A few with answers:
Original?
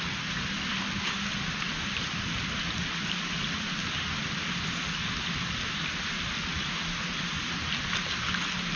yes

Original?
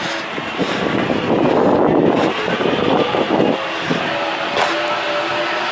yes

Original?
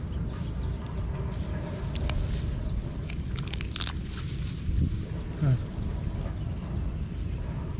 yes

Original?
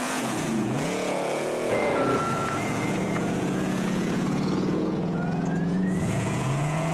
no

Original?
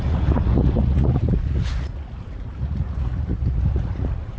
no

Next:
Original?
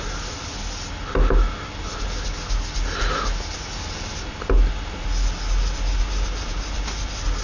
yes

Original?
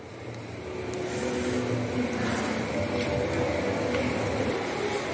yes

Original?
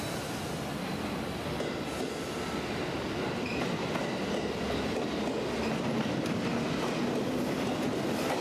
yes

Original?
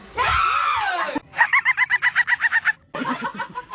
yes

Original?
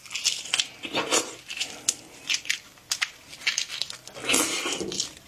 yes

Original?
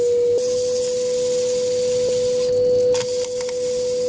yes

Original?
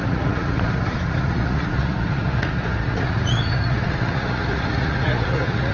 no